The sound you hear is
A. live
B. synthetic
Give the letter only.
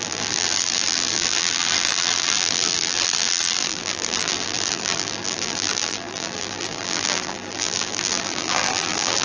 B